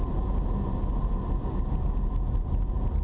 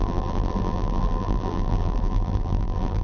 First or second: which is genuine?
first